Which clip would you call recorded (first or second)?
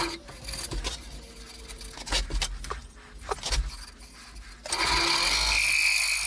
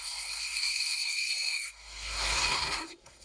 first